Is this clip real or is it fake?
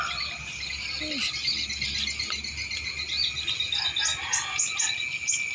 real